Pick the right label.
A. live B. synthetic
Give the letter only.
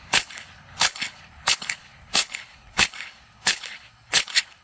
B